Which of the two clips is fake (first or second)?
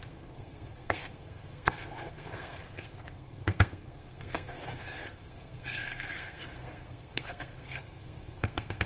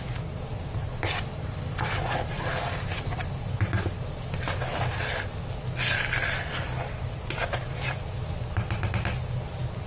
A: first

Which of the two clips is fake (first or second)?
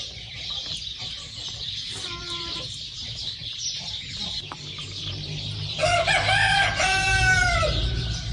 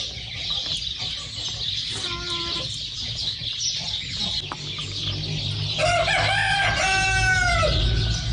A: first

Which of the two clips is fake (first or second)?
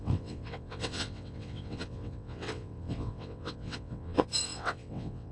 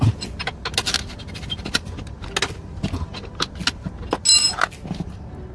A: first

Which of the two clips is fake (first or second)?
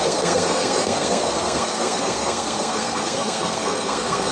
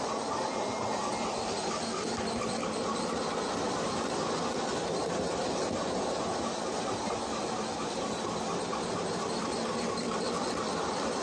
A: first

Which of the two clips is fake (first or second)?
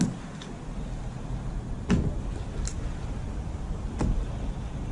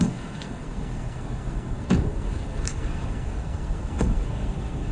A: second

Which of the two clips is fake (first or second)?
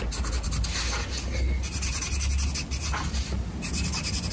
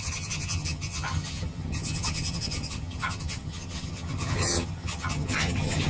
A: second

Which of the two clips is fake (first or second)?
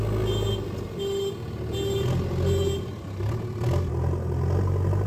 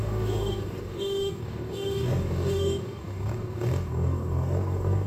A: second